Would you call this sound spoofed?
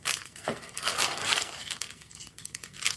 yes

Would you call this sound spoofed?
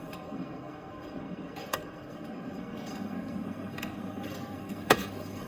yes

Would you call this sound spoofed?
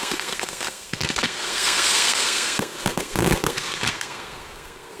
yes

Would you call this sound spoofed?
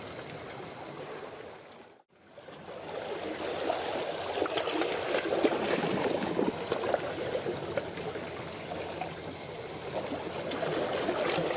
no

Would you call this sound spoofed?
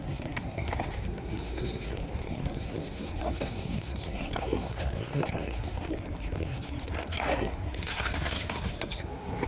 yes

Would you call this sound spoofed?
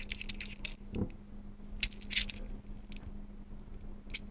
no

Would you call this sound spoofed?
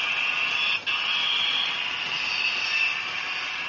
no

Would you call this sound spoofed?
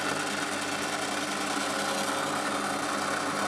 no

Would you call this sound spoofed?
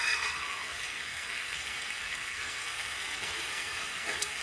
yes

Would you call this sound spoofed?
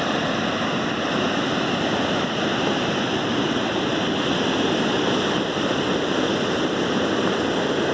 no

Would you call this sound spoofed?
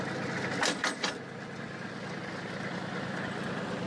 no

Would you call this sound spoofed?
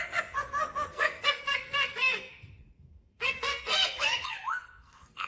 yes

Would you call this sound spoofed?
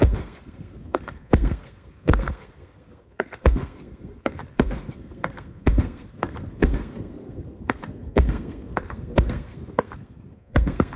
yes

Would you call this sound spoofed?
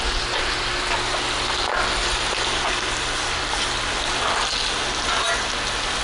no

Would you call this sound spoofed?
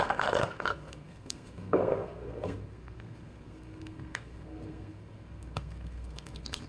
yes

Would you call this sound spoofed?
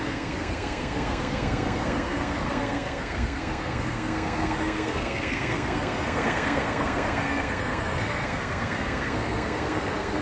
yes